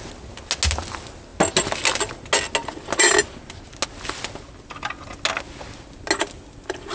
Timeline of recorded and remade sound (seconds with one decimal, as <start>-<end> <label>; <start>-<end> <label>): 0.0-6.9 recorded